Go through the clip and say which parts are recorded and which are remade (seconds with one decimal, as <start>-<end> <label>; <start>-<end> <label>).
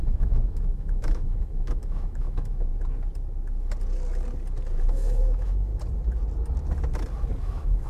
0.0-2.7 remade; 2.7-4.9 recorded; 4.9-5.7 remade; 5.7-7.4 recorded; 7.4-7.9 remade